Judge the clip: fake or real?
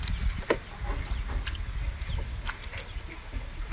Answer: real